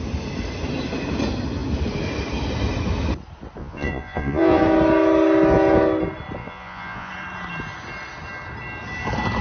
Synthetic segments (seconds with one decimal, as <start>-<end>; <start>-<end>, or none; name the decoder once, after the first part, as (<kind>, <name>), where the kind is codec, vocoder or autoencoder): 3.6-4.6 (vocoder, Vocos); 6.4-7.1